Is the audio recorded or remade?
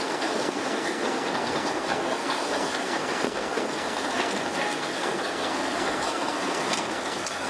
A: remade